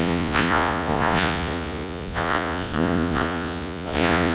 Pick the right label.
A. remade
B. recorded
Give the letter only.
A